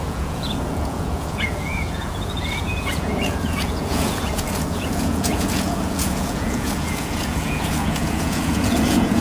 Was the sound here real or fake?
fake